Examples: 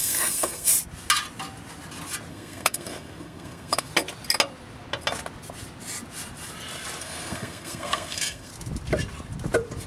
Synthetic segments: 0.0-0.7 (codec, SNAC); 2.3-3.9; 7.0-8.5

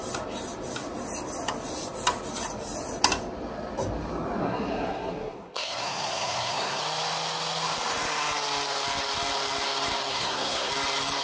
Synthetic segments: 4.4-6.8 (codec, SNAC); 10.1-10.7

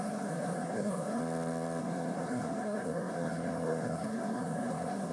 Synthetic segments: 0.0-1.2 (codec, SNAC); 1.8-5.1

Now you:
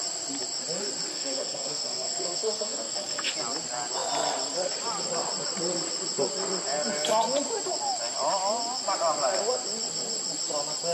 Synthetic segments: 1.1-3.3 (codec, SNAC)